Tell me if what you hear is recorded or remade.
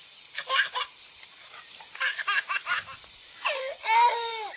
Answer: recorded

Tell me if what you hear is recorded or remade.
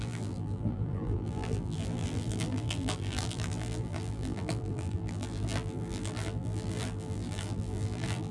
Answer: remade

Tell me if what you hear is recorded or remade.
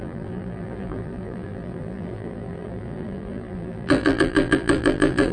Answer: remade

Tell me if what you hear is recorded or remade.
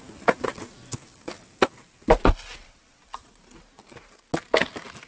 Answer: recorded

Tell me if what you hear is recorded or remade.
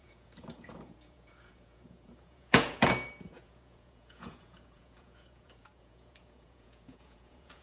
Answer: remade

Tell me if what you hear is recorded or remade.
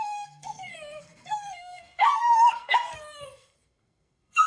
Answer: remade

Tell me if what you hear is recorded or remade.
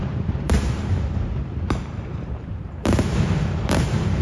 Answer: remade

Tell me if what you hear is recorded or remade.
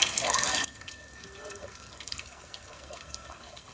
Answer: remade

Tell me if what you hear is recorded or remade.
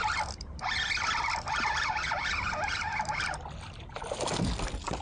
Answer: recorded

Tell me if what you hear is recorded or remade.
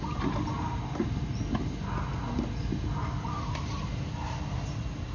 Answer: recorded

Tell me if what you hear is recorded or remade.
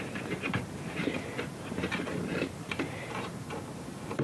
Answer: remade